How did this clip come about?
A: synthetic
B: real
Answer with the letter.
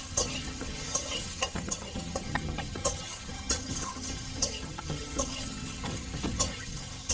A